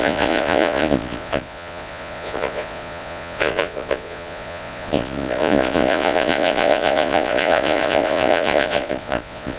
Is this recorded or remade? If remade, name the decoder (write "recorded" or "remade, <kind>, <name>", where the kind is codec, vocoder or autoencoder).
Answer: remade, vocoder, Vocos